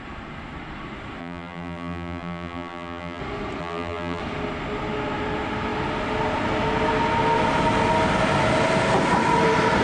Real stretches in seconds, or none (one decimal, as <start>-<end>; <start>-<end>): 0.0-1.2; 3.2-3.6; 4.2-9.8